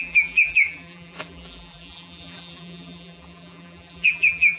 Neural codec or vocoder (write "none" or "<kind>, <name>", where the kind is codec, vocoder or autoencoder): vocoder, BigVGAN v2